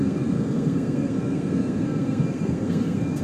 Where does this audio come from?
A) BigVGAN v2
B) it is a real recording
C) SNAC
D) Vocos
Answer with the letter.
C